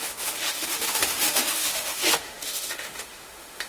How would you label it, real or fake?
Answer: fake